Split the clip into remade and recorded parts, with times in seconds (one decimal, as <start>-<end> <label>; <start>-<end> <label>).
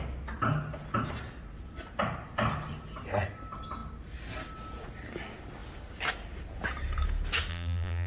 0.0-7.5 recorded; 7.5-8.1 remade